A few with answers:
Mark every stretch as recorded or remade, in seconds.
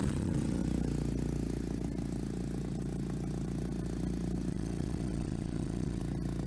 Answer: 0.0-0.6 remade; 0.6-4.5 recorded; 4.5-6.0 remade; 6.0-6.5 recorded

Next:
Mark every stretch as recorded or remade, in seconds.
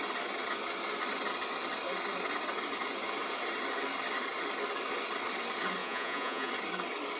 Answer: 0.0-5.8 recorded; 5.8-6.5 remade; 6.5-7.2 recorded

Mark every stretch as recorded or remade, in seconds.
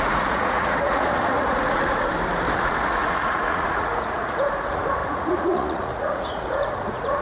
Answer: 0.0-2.1 remade; 2.1-2.6 recorded; 2.6-7.2 remade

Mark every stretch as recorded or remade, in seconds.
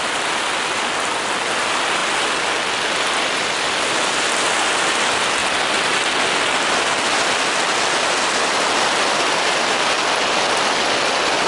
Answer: 0.0-11.5 recorded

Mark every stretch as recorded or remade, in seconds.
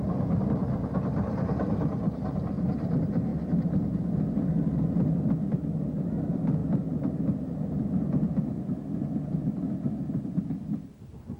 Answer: 0.0-11.4 recorded